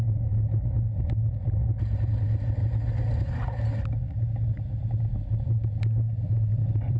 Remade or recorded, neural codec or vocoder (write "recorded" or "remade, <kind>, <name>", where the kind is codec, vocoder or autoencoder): recorded